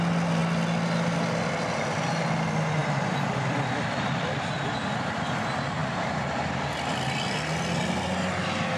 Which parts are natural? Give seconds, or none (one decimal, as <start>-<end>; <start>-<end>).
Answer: 0.0-2.8; 3.9-8.8